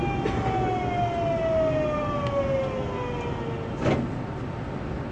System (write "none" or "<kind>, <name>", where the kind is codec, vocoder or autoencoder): none